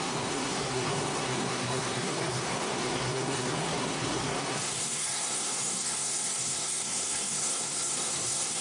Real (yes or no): no